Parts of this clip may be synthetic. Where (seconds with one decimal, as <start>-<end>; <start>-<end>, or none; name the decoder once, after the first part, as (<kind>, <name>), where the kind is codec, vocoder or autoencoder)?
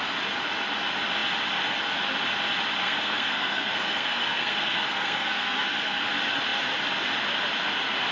2.8-6.1 (codec, SNAC)